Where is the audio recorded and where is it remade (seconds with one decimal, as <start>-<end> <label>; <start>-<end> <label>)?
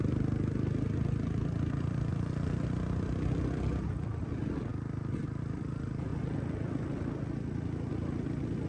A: 0.0-8.7 recorded